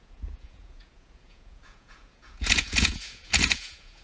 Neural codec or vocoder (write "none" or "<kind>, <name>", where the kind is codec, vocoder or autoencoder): vocoder, Vocos